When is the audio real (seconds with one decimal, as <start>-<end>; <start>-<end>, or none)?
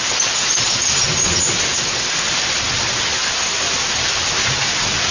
0.0-3.2; 3.9-5.1